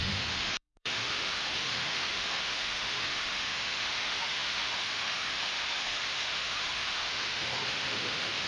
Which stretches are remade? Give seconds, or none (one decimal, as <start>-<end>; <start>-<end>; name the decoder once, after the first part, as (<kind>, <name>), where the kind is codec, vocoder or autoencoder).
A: 0.0-8.5 (autoencoder, DAC-VAE)